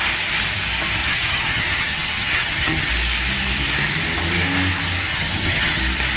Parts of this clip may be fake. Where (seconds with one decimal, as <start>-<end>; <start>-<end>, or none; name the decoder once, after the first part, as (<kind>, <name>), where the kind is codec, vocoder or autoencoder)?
1.0-2.9 (vocoder, HiFi-GAN); 5.1-5.8